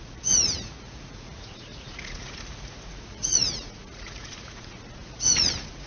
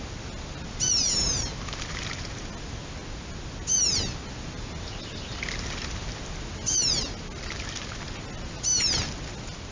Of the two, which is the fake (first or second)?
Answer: first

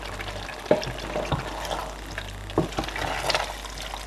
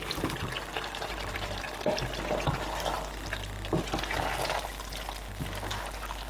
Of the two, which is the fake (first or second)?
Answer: second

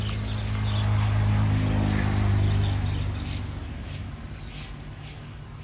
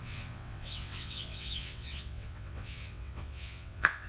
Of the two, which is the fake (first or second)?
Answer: second